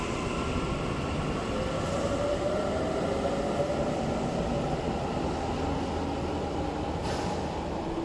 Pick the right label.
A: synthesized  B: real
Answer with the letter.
B